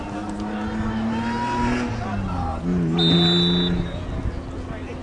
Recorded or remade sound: recorded